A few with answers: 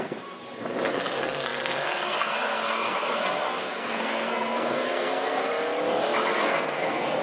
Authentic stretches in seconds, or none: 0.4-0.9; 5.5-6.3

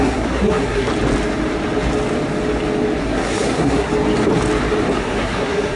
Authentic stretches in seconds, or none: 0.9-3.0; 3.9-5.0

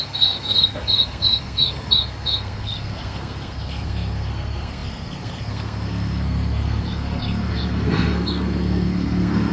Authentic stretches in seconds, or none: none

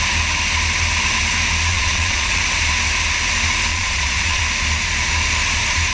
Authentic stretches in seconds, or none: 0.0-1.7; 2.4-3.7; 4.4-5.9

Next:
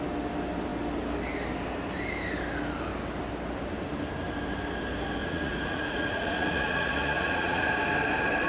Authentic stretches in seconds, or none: 0.0-5.2; 7.7-8.5

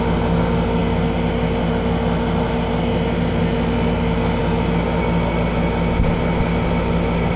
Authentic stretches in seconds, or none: 0.0-7.4

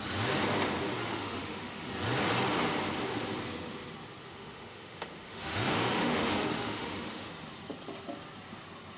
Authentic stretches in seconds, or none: 0.0-1.0; 1.9-4.2; 7.3-9.0